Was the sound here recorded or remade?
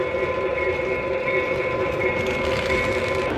recorded